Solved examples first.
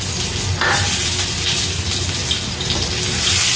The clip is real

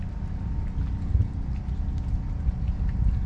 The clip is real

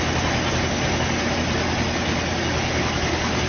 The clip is real